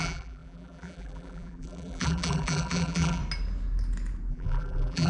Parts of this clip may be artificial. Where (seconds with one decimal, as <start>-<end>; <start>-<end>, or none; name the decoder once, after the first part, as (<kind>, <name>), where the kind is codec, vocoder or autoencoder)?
0.0-3.2 (vocoder, BigVGAN v2); 4.3-5.1